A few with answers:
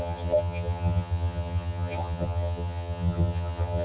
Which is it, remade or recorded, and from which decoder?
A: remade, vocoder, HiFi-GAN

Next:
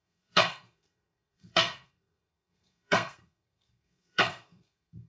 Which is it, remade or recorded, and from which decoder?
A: remade, codec, SNAC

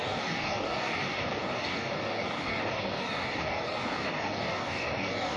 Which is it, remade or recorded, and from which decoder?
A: remade, codec, DAC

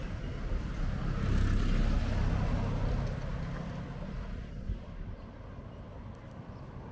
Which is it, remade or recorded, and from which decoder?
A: recorded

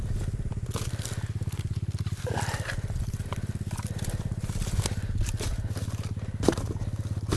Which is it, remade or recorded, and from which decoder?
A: recorded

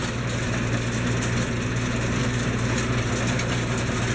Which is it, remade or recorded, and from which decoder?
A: recorded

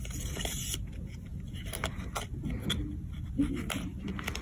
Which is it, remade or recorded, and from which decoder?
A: recorded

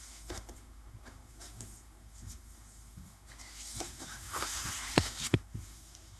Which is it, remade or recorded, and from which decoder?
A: remade, codec, SNAC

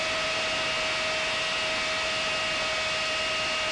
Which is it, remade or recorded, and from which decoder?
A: recorded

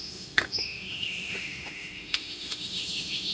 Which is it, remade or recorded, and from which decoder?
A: remade, autoencoder, DAC-VAE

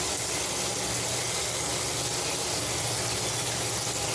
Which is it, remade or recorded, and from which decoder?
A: recorded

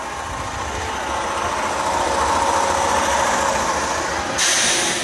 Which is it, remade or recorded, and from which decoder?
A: recorded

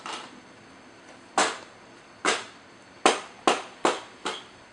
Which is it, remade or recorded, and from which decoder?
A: recorded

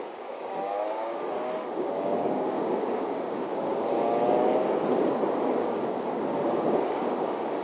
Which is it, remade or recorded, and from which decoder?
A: remade, codec, DAC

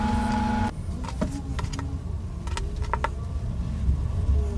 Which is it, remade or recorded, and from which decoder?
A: recorded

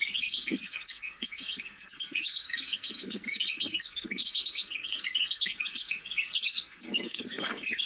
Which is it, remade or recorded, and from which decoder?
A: remade, codec, SNAC